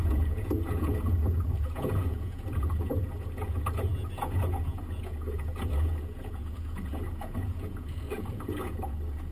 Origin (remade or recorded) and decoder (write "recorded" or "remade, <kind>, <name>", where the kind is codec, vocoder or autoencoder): remade, vocoder, Vocos